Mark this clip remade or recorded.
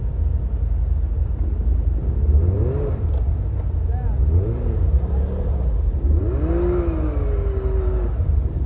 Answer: recorded